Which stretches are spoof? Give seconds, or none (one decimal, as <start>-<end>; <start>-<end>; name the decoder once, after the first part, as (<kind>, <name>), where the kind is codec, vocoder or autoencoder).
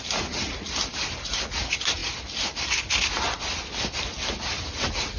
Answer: none